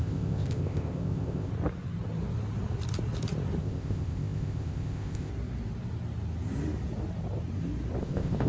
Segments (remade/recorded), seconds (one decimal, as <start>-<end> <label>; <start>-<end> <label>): 0.0-1.5 remade; 1.5-3.6 recorded; 3.6-5.3 remade; 5.3-8.0 recorded; 8.0-8.5 remade